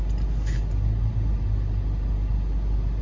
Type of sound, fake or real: real